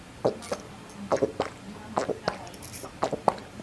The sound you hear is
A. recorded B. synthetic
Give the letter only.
A